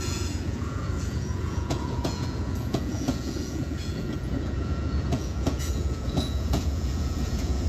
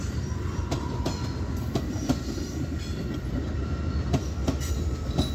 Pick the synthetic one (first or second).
first